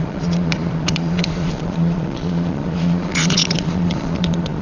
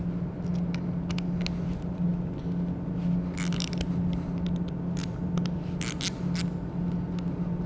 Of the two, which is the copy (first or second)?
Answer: first